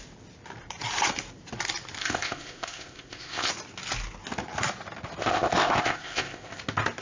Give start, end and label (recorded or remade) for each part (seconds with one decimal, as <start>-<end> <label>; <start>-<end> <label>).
0.0-2.0 recorded; 2.0-3.5 remade; 3.5-5.2 recorded; 5.2-6.6 remade; 6.6-7.0 recorded